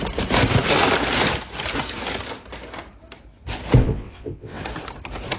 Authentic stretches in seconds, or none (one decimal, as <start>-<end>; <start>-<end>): 0.0-3.8; 4.6-5.4